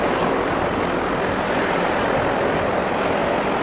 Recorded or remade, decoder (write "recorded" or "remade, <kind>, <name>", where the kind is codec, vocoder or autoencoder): recorded